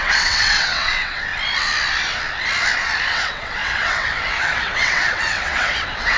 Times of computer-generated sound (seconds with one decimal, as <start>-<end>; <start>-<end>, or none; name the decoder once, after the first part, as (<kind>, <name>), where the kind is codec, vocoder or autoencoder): 0.0-1.3 (vocoder, WaveNeXt); 3.1-6.2

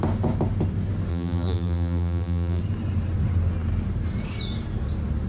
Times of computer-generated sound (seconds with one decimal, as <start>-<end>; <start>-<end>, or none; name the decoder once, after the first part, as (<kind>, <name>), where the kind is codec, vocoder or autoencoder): 1.1-2.6 (vocoder, BigVGAN v2)